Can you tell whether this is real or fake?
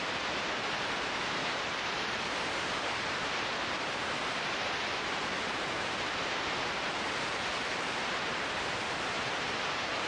fake